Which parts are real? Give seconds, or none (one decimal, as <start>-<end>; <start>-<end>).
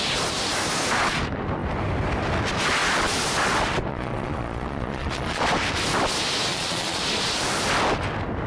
0.0-3.9; 5.4-6.5; 7.0-8.5